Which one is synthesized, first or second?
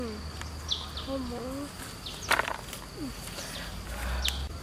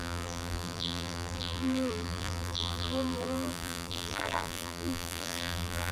second